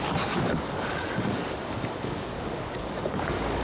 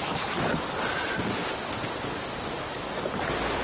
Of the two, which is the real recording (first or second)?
second